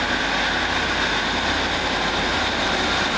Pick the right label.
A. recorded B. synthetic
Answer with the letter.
A